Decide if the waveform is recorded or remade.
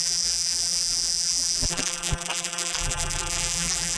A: remade